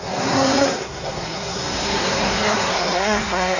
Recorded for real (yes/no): no